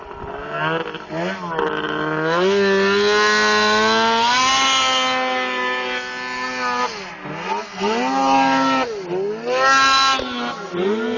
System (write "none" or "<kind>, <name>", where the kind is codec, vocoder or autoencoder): none